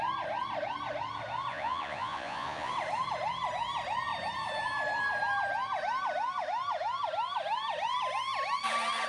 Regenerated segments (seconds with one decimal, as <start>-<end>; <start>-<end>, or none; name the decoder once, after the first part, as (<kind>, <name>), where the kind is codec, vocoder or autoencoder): 1.5-2.7 (vocoder, Vocos)